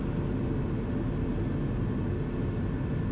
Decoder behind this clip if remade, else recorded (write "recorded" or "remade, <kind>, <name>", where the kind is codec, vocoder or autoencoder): recorded